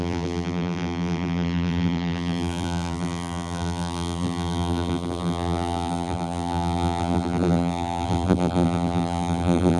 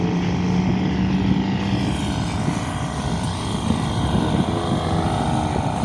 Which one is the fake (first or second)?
first